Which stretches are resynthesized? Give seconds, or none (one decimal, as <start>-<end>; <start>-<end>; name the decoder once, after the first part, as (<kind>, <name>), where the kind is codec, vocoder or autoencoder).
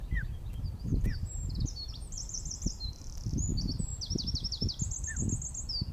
0.0-3.9 (vocoder, BigVGAN v2)